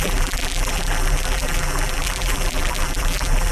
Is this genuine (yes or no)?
no